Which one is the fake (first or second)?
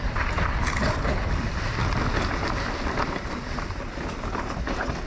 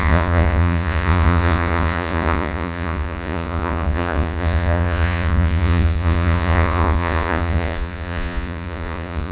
second